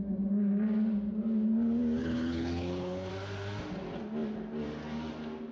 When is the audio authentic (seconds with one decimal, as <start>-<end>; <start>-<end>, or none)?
0.0-2.0; 3.1-5.5